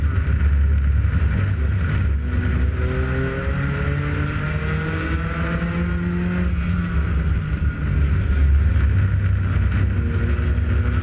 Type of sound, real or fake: real